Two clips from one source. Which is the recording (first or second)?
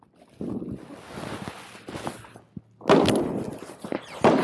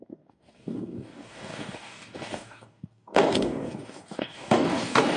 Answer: first